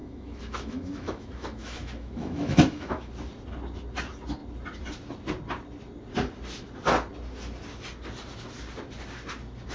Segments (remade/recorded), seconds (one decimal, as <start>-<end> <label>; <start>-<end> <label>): 0.0-3.1 remade; 3.1-9.7 recorded